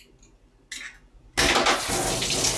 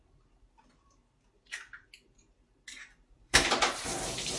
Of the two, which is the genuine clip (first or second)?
first